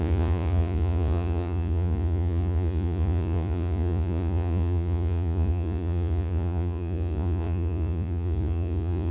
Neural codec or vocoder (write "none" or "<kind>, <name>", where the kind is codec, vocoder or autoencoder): vocoder, Vocos